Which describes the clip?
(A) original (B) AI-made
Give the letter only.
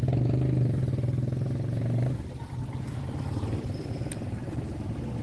A